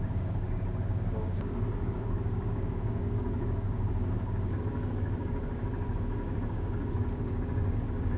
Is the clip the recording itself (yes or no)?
no